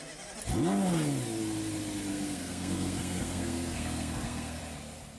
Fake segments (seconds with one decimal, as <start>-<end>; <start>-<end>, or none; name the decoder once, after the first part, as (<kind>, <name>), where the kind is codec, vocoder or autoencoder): 2.1-4.6 (codec, SNAC)